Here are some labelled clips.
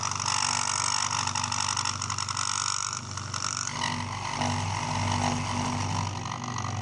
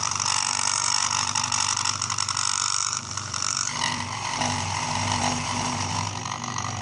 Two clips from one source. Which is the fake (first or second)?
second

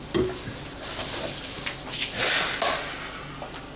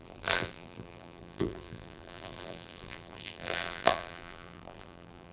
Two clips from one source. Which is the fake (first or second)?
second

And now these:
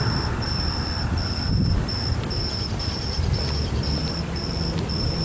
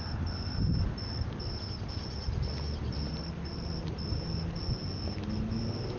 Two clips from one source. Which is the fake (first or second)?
first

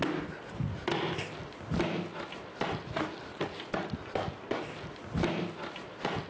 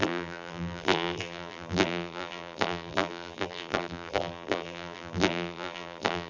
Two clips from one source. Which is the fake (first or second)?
second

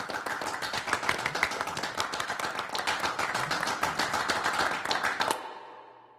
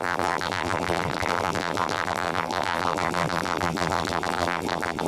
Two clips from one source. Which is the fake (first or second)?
second